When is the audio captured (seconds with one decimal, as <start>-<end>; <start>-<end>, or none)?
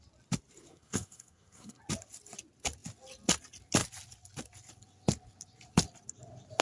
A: 0.0-0.7; 1.8-6.6